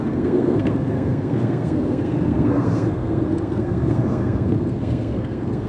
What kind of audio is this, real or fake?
fake